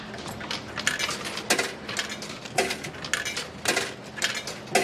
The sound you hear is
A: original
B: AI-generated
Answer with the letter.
A